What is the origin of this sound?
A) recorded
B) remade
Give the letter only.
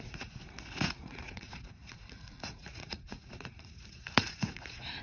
B